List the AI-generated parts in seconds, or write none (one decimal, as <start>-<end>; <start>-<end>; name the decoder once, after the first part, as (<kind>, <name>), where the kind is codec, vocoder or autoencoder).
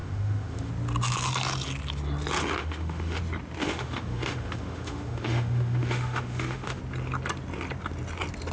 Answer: 0.0-0.7 (autoencoder, DAC-VAE); 2.6-3.2; 3.6-6.8